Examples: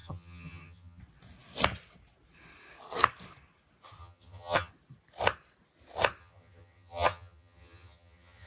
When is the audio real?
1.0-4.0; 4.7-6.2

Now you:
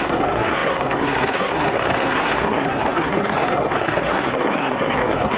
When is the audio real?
none

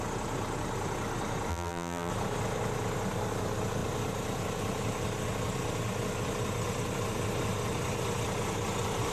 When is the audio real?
0.0-1.5; 2.1-9.1